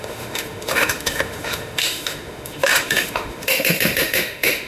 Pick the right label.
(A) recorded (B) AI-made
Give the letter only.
B